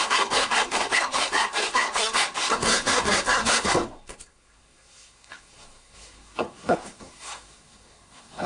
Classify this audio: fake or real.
fake